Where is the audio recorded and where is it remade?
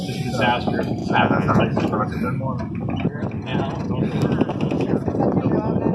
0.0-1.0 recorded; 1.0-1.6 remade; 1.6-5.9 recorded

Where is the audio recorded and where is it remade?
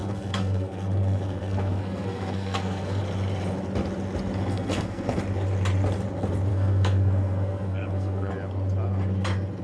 0.0-3.0 remade; 3.0-4.5 recorded; 4.5-5.2 remade; 5.2-6.5 recorded; 6.5-8.3 remade; 8.3-9.6 recorded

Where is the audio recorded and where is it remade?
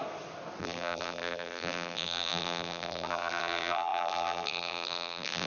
0.0-0.6 recorded; 0.6-5.5 remade